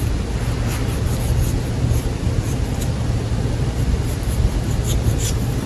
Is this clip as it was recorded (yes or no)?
yes